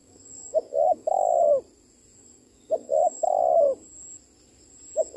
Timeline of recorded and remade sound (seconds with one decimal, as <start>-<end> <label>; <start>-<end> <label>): 0.0-1.4 remade; 1.4-2.2 recorded; 2.2-3.3 remade; 3.3-5.2 recorded